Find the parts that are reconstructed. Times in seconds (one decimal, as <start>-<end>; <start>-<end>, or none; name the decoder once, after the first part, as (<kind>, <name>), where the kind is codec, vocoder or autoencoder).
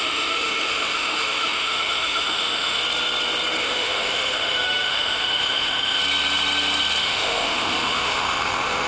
0.0-2.8 (autoencoder, DAC-VAE); 3.6-6.0; 7.0-8.9